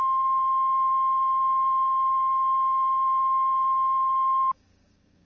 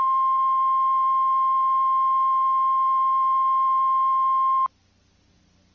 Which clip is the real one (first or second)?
second